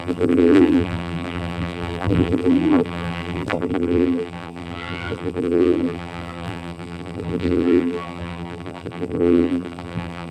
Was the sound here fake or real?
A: fake